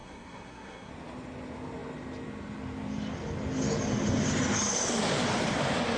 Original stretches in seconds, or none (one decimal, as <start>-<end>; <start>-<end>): 0.9-6.0

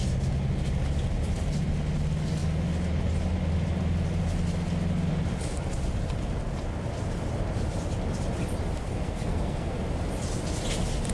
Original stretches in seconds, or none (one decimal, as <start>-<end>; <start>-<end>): 0.0-8.8; 9.8-11.1